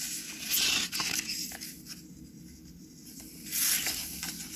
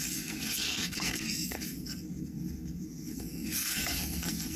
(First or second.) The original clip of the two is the first